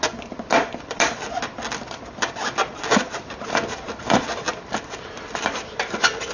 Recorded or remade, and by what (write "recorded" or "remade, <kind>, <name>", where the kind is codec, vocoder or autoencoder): recorded